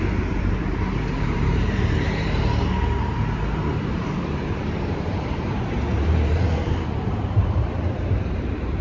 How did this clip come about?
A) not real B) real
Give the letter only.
A